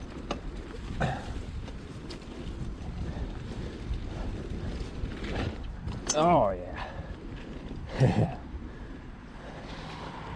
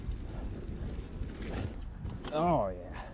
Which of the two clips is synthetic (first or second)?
first